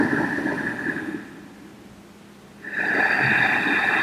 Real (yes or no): yes